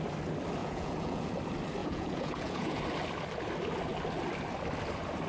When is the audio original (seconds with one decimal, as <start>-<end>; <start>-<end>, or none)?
0.0-0.6; 1.3-1.8; 2.8-5.3

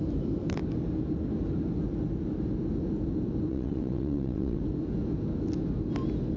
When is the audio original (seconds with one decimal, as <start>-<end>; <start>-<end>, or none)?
0.0-3.5; 4.6-6.4